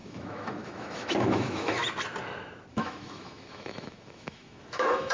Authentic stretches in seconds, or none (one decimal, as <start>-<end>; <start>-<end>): 1.8-2.7